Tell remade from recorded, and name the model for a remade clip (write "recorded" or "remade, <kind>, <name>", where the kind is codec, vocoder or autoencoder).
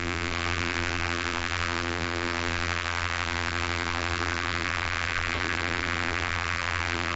remade, vocoder, BigVGAN v2